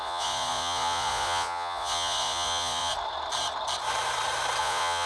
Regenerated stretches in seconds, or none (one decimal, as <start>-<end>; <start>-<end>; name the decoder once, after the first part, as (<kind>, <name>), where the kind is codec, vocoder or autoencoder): 0.0-2.9 (vocoder, Vocos); 4.6-5.1